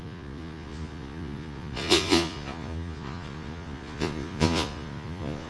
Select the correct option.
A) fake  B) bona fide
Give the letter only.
A